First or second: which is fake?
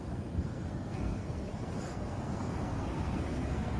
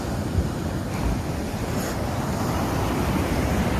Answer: first